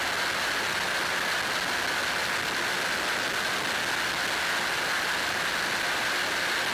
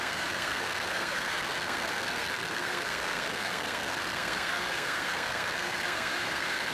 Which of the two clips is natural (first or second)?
first